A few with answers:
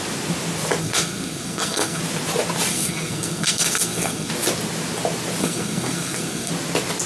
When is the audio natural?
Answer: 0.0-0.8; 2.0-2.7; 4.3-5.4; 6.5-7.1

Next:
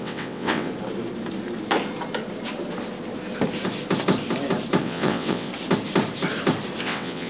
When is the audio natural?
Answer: 0.7-4.8; 5.5-6.8

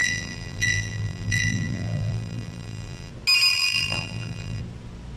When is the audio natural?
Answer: 3.1-3.5; 4.6-5.2

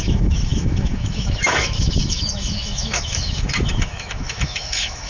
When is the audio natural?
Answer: none

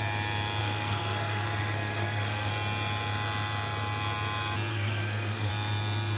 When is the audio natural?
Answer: 0.0-0.6; 2.5-4.7; 5.5-6.2

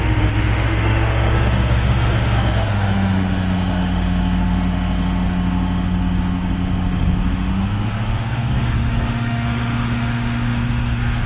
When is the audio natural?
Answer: none

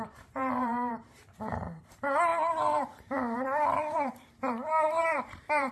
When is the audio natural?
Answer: none